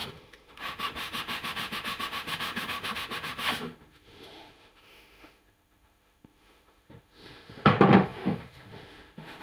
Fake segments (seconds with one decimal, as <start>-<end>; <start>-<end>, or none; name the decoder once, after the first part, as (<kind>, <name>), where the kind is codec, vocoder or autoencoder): 0.0-9.4 (autoencoder, DAC-VAE)